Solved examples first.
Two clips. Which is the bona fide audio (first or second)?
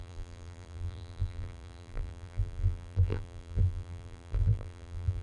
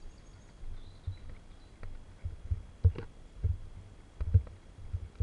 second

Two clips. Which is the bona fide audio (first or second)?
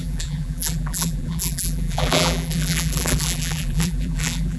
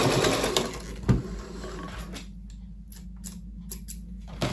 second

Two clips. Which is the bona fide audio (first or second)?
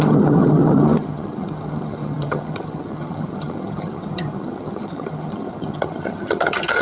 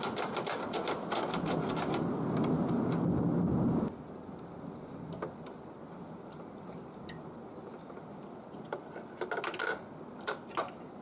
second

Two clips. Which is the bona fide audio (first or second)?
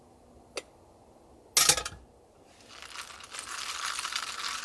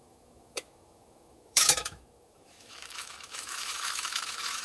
first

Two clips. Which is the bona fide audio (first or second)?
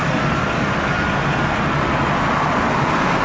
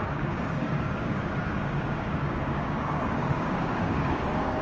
first